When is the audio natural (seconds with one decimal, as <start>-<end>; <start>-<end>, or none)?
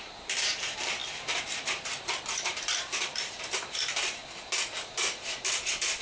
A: 1.0-2.2; 4.2-4.8